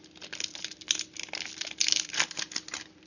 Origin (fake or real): fake